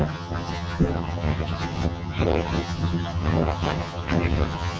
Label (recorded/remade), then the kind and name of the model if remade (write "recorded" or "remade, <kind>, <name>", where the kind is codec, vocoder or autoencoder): remade, vocoder, HiFi-GAN